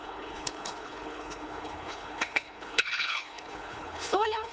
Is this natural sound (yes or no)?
no